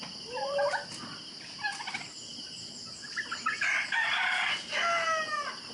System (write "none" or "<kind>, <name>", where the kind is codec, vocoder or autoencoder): none